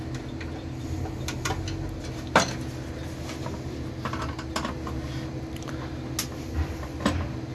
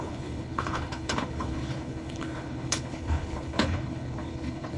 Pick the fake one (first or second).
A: second